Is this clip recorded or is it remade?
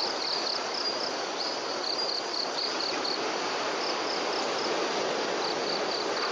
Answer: recorded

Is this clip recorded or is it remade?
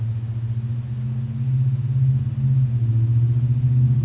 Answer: recorded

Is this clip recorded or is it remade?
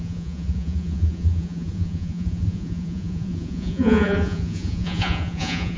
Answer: remade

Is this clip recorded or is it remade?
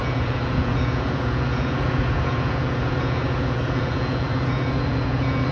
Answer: remade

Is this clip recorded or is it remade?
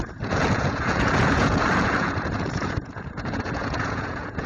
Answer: remade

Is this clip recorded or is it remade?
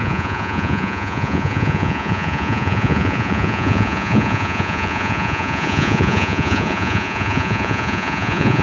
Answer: remade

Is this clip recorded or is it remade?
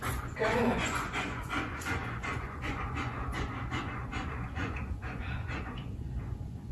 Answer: remade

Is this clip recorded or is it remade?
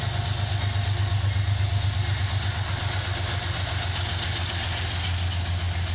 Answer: recorded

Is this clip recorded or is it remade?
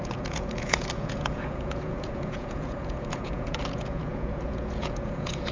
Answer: remade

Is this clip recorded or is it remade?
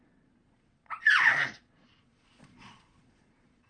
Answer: remade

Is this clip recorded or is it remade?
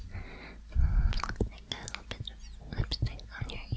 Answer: recorded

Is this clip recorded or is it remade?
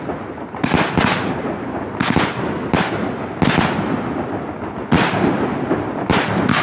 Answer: recorded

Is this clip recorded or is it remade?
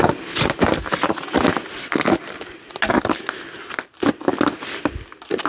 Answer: recorded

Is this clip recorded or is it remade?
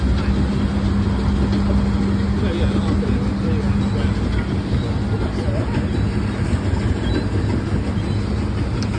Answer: recorded